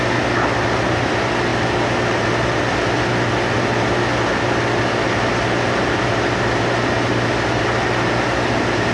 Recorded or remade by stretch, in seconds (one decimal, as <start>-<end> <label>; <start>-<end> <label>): 0.0-8.9 recorded